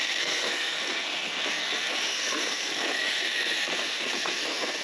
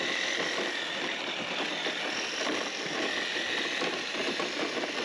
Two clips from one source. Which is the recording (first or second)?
second